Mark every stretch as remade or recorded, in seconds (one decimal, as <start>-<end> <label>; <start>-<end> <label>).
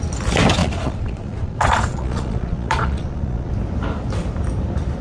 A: 0.0-0.6 recorded; 0.6-3.5 remade; 3.5-5.0 recorded